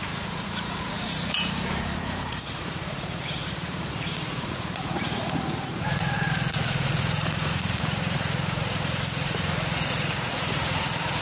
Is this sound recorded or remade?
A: remade